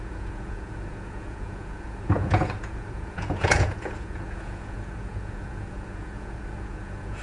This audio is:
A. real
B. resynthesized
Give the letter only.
B